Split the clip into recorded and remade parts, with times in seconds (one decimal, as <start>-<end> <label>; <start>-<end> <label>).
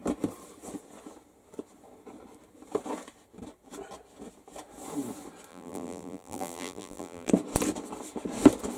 0.0-5.5 recorded; 5.5-7.3 remade; 7.3-8.8 recorded